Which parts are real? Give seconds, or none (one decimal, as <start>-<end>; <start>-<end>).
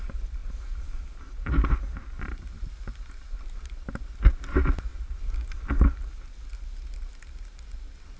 0.0-8.2